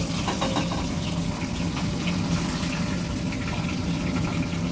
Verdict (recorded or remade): recorded